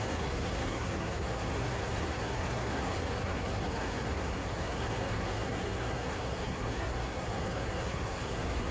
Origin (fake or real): fake